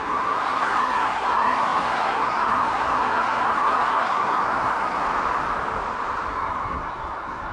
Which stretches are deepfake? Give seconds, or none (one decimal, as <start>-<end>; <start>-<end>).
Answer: 0.0-5.0; 6.3-7.5